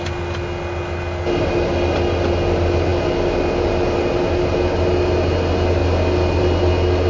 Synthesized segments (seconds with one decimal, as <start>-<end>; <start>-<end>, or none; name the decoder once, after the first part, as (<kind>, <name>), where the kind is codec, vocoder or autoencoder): none